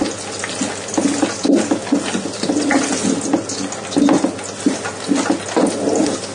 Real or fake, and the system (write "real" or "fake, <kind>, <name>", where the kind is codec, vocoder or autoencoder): real